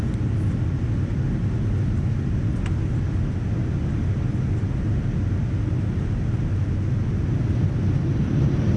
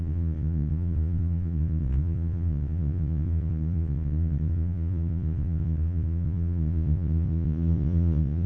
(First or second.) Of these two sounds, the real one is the first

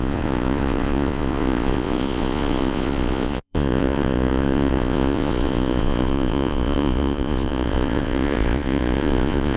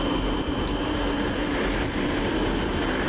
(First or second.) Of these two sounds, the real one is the second